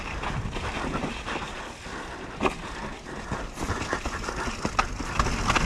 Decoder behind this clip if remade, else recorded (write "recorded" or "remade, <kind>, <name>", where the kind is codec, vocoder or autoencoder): recorded